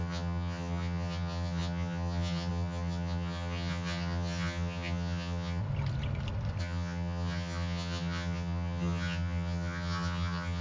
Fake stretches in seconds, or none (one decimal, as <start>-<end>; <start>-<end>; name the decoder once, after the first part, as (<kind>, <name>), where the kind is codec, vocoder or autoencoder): 0.0-5.6 (vocoder, HiFi-GAN); 6.6-10.6